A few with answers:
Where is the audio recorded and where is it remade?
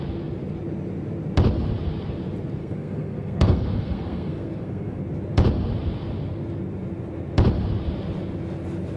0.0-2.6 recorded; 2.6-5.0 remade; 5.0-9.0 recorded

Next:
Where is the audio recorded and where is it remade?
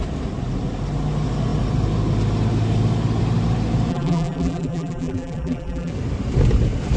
0.0-3.9 recorded; 3.9-5.9 remade; 5.9-7.0 recorded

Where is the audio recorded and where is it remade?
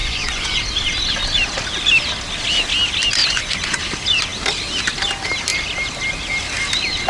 0.0-0.6 remade; 0.6-3.2 recorded; 3.2-3.8 remade; 3.8-7.1 recorded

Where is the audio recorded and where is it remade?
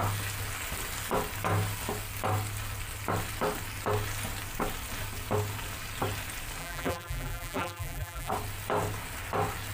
0.0-6.6 recorded; 6.6-8.3 remade; 8.3-9.7 recorded